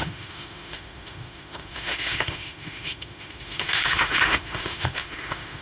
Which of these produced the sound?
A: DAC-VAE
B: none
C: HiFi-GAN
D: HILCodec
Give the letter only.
A